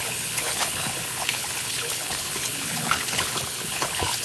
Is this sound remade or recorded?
remade